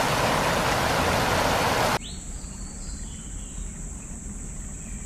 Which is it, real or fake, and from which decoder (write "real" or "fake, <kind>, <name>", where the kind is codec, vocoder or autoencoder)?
real